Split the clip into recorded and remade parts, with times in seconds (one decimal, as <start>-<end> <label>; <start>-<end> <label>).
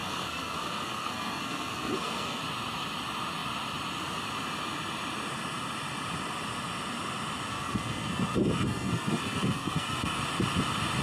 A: 0.0-2.4 remade; 2.4-7.5 recorded; 7.5-10.2 remade; 10.2-11.0 recorded